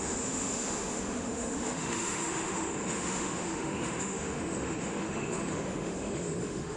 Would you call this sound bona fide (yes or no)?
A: no